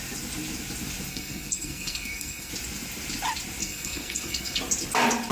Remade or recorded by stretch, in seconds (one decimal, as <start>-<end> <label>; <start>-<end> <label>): 0.0-1.1 recorded; 1.1-2.5 remade; 2.5-3.6 recorded; 3.6-4.6 remade; 4.6-5.3 recorded